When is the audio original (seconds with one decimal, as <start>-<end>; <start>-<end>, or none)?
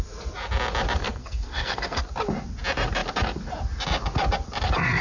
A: 0.0-1.0; 2.0-5.0